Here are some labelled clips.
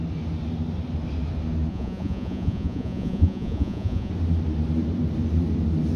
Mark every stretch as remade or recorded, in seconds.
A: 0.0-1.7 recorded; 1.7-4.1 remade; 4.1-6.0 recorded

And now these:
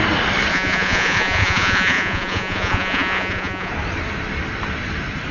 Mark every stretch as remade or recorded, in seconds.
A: 0.0-0.5 recorded; 0.5-3.7 remade; 3.7-5.3 recorded

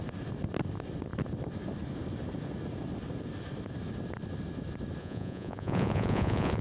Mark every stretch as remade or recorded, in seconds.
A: 0.0-5.0 recorded; 5.0-6.6 remade

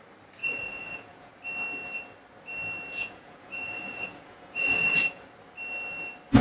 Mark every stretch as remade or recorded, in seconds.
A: 0.0-0.4 recorded; 0.4-1.3 remade; 1.3-3.0 recorded; 3.0-5.3 remade; 5.3-6.4 recorded